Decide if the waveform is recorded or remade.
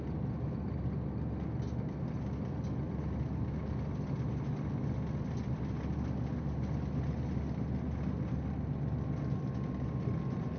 recorded